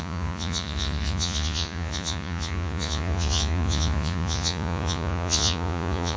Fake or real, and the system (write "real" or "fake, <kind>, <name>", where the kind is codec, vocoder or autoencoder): fake, vocoder, Vocos